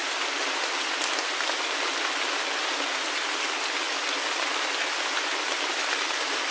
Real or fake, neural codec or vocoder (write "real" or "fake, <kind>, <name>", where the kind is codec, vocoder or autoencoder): real